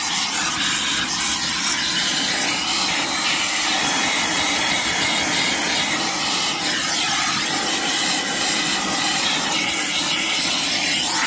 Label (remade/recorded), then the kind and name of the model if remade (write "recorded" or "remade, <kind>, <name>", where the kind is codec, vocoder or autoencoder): recorded